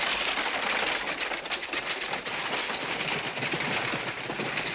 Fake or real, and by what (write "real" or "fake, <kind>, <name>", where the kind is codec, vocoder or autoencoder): real